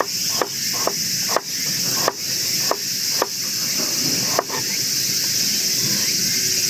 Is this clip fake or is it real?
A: real